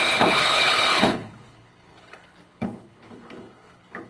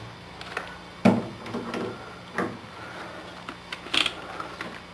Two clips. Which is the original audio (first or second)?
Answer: second